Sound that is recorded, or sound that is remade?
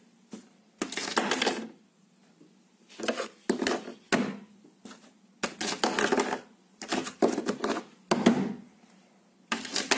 recorded